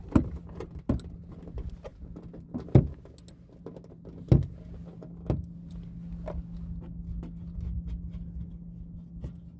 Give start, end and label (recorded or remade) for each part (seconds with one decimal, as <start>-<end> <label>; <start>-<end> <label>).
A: 0.0-9.6 recorded